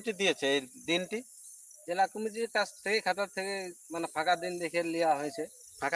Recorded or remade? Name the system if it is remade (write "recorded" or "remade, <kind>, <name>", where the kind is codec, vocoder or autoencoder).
recorded